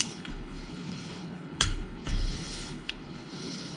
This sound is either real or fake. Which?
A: fake